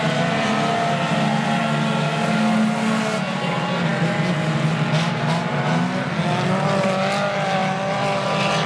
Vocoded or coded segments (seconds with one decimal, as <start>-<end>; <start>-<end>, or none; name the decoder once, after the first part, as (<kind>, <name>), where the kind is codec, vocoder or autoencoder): none